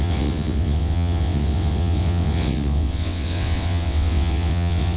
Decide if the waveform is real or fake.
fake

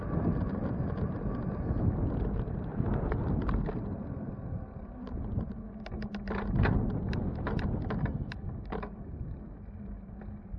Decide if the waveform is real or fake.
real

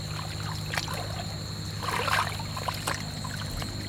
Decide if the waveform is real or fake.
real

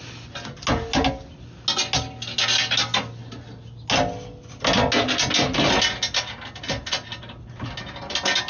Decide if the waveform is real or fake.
real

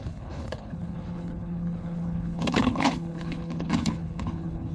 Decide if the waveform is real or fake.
fake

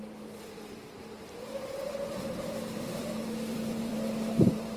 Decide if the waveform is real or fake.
fake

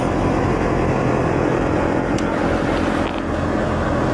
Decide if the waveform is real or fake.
real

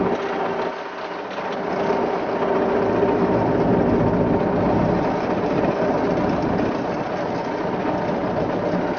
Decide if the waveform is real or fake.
real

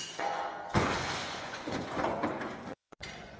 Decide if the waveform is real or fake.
fake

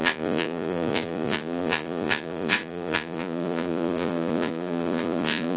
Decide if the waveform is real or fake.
fake